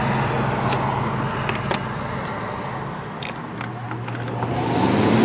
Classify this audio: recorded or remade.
recorded